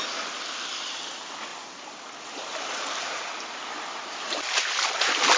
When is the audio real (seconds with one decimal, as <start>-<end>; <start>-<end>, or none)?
0.0-1.5; 4.7-5.4